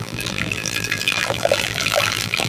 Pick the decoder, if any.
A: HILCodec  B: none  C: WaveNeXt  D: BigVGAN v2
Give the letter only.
D